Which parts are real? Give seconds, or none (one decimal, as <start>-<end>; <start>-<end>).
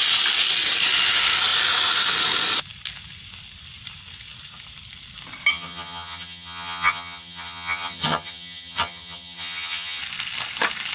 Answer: 0.0-5.5; 10.0-10.9